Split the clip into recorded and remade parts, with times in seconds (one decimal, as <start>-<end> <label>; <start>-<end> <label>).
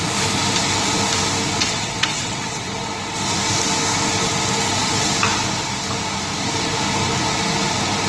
0.0-1.6 recorded; 1.6-2.9 remade; 2.9-8.1 recorded